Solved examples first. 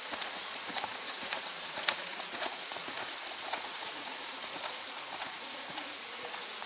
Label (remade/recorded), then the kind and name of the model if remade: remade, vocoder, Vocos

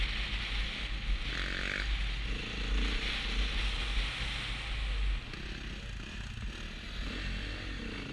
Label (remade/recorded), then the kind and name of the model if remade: recorded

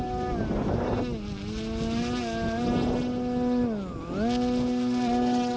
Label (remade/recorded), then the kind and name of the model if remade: recorded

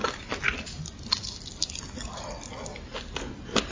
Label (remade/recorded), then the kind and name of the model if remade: recorded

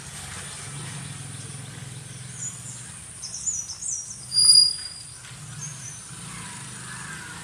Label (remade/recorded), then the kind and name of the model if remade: recorded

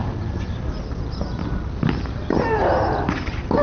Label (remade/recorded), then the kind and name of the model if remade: recorded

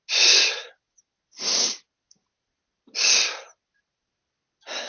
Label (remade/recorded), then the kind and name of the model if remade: recorded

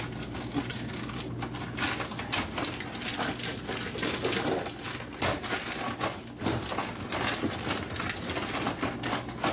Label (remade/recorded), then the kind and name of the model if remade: recorded